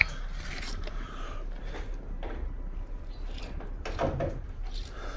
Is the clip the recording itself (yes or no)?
yes